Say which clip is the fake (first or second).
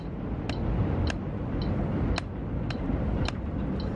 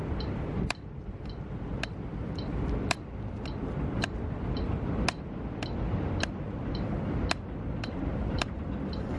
second